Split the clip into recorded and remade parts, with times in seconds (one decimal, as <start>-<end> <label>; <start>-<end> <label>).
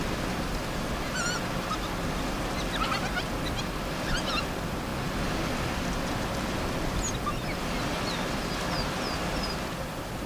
0.0-10.3 recorded